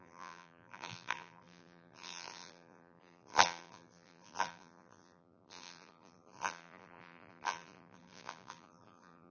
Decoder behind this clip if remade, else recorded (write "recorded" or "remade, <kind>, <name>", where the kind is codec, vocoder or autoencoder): remade, vocoder, BigVGAN v2